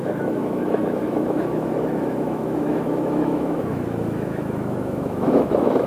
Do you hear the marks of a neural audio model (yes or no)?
yes